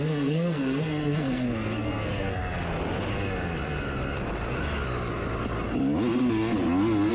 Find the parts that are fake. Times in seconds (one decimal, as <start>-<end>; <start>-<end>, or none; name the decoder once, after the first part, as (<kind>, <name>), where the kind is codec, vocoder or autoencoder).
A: 0.0-2.4 (codec, SNAC)

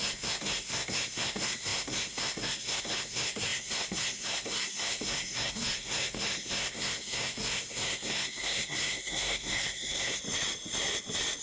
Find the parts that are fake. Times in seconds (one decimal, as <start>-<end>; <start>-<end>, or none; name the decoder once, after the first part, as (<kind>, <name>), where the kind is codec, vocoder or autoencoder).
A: 0.0-10.2 (codec, SNAC)

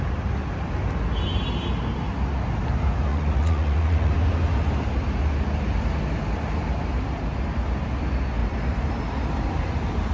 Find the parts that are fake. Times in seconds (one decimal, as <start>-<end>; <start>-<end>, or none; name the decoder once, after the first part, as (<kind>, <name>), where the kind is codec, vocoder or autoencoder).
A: 3.1-4.1 (vocoder, Vocos)

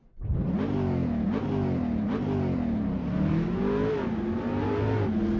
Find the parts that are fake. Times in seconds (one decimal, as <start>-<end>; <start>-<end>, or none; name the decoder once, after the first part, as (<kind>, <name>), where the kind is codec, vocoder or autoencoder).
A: none

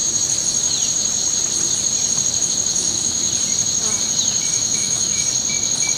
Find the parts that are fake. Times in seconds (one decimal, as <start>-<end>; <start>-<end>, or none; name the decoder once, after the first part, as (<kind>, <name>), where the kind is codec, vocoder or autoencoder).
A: 2.7-3.3 (autoencoder, DAC-VAE); 4.5-5.2